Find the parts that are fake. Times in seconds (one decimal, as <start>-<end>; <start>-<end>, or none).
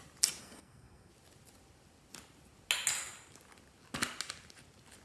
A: 0.4-1.1